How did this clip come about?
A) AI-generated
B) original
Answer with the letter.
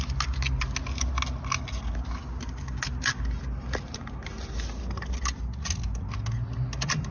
B